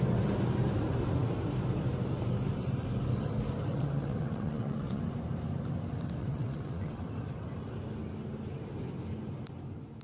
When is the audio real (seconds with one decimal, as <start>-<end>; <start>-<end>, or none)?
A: 0.0-3.7; 5.0-6.2; 7.0-10.0